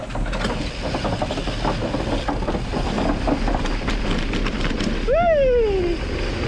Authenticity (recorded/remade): recorded